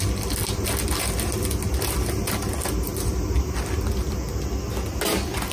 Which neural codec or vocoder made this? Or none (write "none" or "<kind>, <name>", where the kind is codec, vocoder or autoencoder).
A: none